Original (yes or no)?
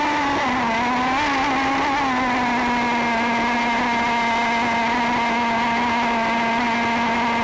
yes